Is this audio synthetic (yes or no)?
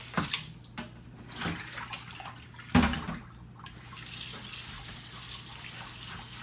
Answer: no